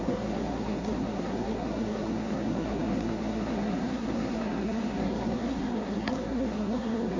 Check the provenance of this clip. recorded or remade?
remade